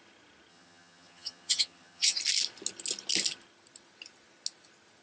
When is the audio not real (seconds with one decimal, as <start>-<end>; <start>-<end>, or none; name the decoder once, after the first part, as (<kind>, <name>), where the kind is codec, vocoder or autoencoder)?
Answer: 0.5-2.2 (vocoder, HiFi-GAN)